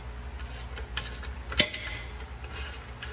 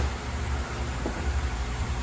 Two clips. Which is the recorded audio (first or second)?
first